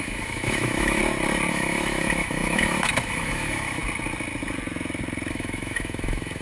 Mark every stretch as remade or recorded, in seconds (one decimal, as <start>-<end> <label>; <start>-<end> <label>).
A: 0.0-1.0 remade; 1.0-1.5 recorded; 1.5-3.8 remade; 3.8-5.3 recorded; 5.3-6.4 remade